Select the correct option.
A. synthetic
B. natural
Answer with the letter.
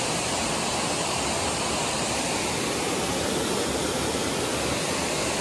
B